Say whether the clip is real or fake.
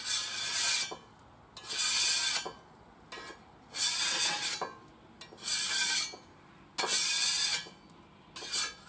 real